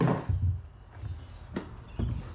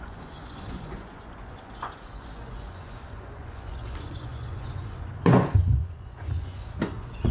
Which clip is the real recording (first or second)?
first